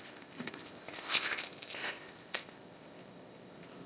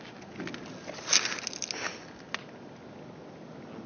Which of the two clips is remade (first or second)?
first